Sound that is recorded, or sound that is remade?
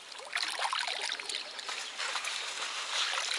recorded